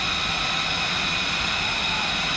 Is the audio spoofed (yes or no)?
no